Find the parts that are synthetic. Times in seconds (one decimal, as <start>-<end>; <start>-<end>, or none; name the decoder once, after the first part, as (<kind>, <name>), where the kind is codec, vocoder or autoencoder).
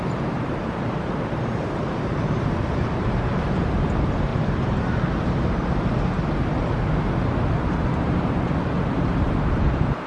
0.0-4.3 (vocoder, BigVGAN v2); 7.5-10.1